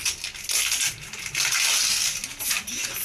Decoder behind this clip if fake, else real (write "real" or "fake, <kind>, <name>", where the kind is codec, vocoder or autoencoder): real